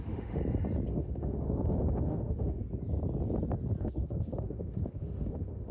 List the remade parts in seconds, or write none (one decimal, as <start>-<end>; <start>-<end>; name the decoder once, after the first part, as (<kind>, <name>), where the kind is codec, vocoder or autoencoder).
0.0-0.4 (autoencoder, DAC-VAE); 0.9-2.6; 3.8-5.7